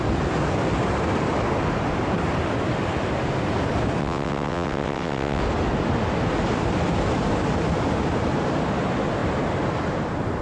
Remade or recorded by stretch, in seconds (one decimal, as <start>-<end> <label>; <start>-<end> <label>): 0.0-4.0 recorded; 4.0-5.4 remade; 5.4-10.4 recorded